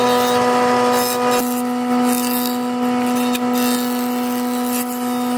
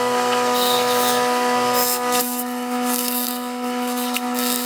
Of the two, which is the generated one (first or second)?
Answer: second